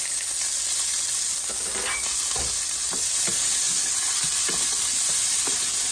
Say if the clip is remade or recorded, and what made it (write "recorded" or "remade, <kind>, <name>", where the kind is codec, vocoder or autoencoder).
recorded